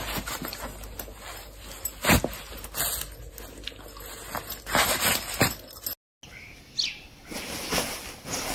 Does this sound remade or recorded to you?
recorded